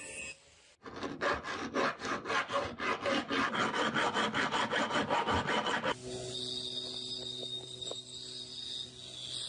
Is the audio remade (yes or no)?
no